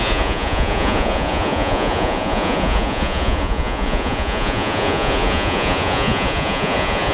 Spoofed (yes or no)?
yes